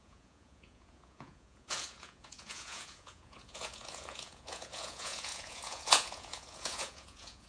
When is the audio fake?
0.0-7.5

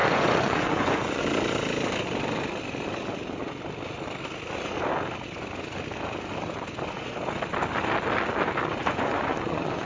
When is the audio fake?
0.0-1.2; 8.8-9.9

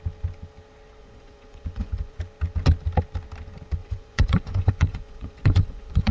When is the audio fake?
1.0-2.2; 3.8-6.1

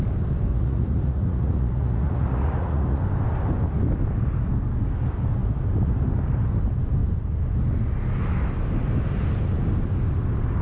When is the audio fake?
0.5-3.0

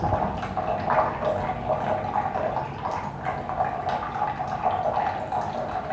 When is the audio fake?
none